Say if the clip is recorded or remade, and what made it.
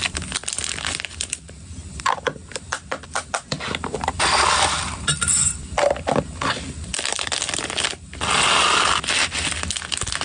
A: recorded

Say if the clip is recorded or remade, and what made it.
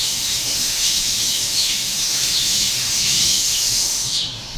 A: remade, autoencoder, DAC-VAE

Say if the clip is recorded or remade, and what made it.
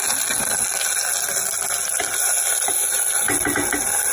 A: recorded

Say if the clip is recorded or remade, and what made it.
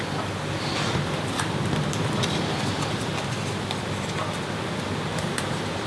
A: remade, vocoder, BigVGAN v2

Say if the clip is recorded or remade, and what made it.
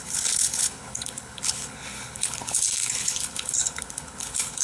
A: remade, codec, HILCodec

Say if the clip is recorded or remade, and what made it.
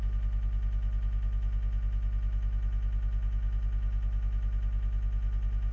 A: recorded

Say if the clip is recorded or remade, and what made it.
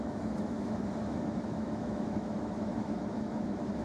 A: remade, autoencoder, DAC-VAE